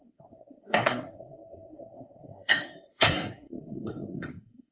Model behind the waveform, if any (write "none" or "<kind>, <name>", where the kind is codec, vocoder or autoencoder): codec, SNAC